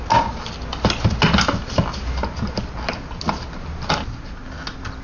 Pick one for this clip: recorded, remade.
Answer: recorded